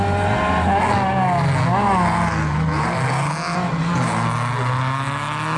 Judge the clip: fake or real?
real